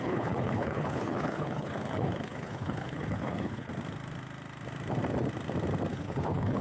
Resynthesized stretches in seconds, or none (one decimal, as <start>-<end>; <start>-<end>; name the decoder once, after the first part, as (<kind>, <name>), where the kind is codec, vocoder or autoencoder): 0.0-3.7 (codec, HILCodec); 5.9-6.6